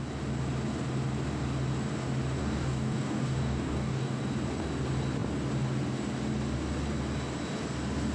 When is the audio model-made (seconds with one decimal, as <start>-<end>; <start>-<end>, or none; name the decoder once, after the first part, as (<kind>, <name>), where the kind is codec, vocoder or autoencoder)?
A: 2.4-4.2 (codec, DAC)